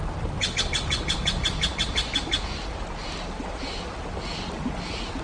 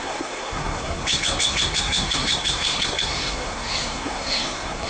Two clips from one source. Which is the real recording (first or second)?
first